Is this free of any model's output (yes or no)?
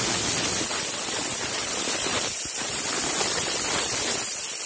yes